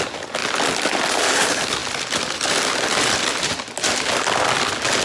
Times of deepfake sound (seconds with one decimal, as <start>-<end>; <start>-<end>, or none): none